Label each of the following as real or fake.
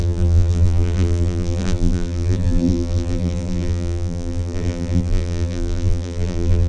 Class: fake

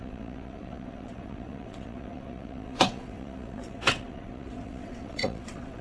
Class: fake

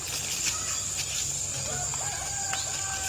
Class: real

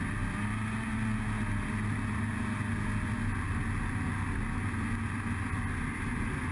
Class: real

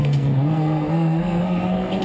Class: fake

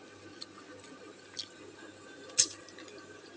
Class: real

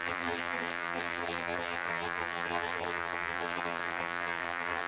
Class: fake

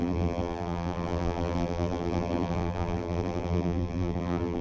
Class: fake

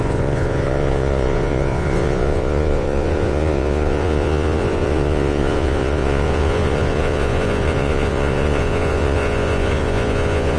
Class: fake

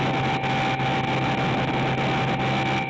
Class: real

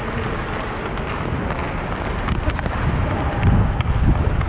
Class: real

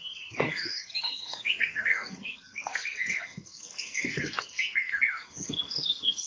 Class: fake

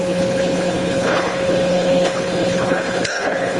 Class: fake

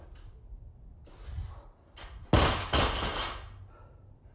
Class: real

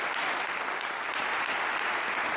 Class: real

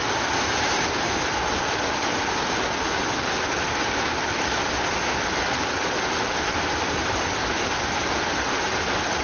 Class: real